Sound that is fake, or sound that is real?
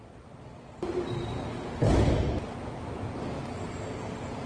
real